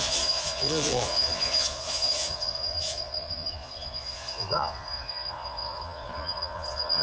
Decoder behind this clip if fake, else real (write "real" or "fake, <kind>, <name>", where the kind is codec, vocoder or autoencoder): fake, vocoder, Vocos